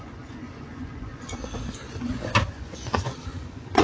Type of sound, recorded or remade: remade